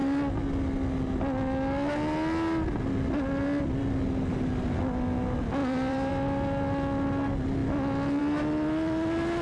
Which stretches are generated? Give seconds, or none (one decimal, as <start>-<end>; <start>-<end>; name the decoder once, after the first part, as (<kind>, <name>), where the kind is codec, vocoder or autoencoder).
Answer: 5.6-6.1 (vocoder, BigVGAN v2)